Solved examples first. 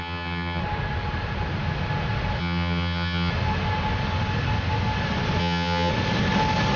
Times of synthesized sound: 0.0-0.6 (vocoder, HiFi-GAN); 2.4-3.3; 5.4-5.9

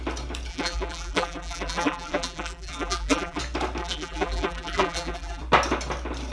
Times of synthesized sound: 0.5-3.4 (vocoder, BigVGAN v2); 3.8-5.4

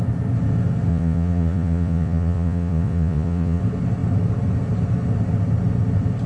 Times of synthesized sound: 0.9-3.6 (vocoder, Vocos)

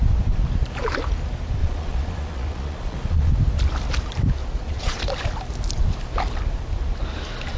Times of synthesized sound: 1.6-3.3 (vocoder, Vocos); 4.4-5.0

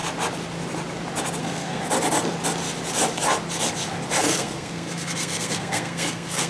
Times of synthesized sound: 1.4-1.8 (codec, SNAC); 4.2-6.5